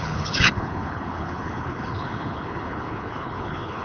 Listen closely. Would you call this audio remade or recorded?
remade